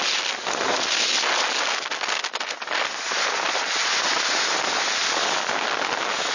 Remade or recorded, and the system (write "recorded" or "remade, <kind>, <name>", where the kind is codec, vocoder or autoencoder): recorded